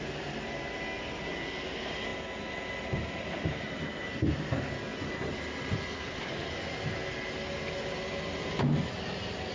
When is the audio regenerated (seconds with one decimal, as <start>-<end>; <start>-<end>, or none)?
none